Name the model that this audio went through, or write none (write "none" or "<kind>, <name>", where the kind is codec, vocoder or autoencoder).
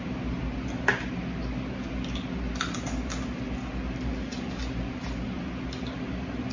none